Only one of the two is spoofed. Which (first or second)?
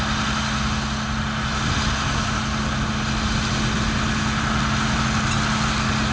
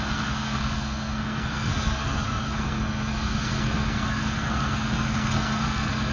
second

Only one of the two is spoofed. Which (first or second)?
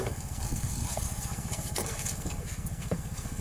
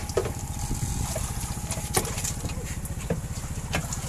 first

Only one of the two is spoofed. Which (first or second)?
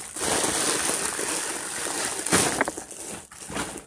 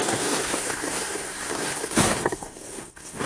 second